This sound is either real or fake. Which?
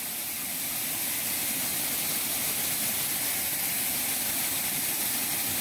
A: real